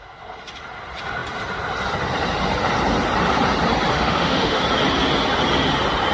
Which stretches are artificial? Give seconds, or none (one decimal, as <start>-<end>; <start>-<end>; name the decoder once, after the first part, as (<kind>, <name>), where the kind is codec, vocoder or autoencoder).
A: 3.9-4.6 (autoencoder, DAC-VAE)